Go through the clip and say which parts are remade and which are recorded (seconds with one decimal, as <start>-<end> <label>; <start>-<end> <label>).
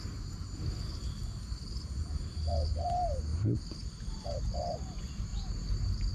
0.0-3.3 recorded; 3.3-4.4 remade; 4.4-6.1 recorded